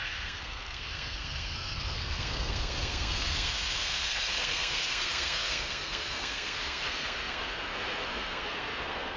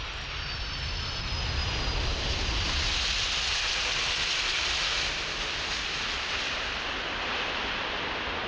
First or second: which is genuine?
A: second